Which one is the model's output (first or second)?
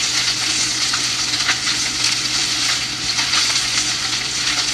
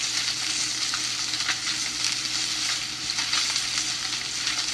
first